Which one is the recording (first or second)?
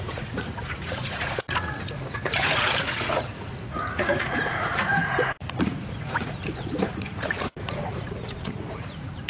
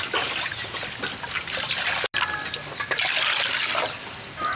second